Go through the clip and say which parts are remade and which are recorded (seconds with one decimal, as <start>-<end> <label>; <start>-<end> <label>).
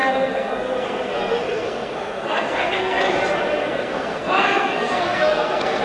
0.0-3.0 remade; 3.0-3.6 recorded; 3.6-5.8 remade